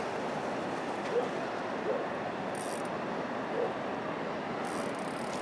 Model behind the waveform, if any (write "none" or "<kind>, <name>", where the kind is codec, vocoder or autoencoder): none